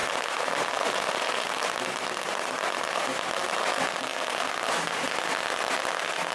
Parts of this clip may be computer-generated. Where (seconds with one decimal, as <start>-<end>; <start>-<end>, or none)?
none